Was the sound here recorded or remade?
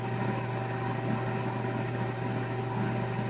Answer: recorded